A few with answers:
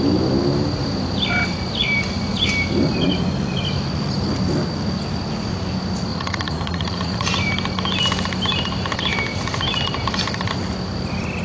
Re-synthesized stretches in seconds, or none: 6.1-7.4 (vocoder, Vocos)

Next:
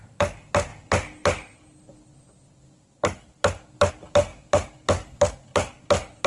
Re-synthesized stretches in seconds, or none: none

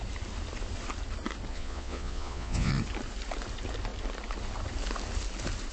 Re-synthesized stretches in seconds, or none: 1.5-2.7 (vocoder, Vocos)